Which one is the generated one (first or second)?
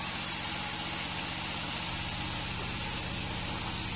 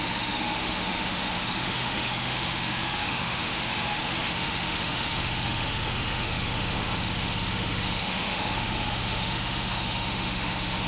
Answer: second